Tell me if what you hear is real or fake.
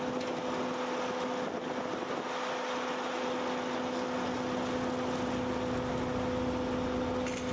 real